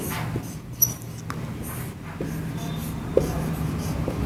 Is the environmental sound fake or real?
real